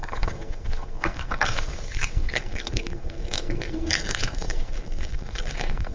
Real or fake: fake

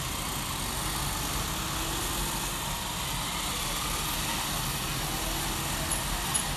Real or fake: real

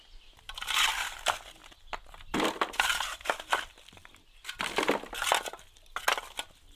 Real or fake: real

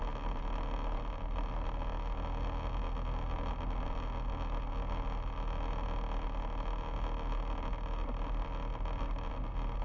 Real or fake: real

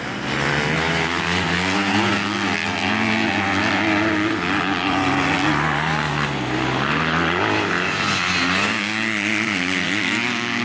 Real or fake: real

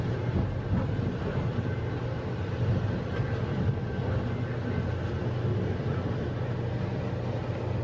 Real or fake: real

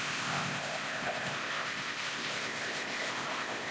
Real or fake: fake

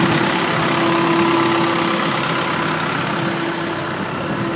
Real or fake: real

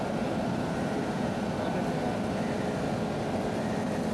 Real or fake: real